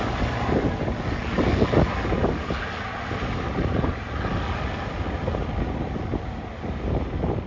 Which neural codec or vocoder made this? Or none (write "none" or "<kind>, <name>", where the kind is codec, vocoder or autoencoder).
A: none